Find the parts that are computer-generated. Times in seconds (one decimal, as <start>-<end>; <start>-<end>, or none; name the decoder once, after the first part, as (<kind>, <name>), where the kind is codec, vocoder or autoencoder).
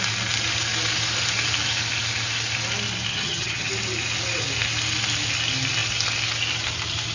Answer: 3.1-3.7 (vocoder, HiFi-GAN)